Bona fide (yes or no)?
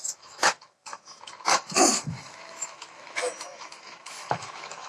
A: no